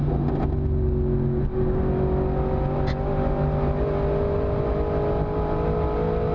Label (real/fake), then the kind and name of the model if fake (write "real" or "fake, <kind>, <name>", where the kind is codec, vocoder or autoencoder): real